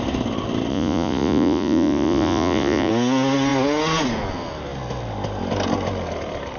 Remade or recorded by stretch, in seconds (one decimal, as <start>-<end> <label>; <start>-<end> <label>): 0.0-0.7 recorded; 0.7-2.9 remade; 2.9-6.6 recorded